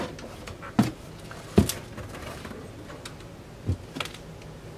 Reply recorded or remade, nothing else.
recorded